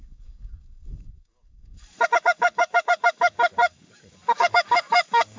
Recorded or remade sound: remade